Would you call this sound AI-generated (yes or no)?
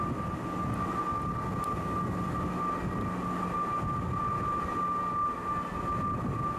no